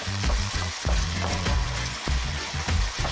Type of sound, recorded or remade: remade